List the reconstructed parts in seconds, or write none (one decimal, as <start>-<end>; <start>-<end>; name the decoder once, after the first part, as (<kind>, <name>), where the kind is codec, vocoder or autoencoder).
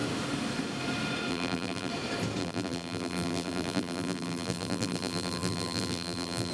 1.3-1.9 (vocoder, BigVGAN v2); 2.4-6.5